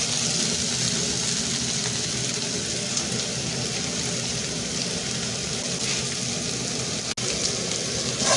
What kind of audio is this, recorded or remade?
recorded